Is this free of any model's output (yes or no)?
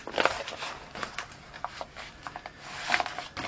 yes